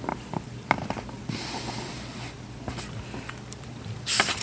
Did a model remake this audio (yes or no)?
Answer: yes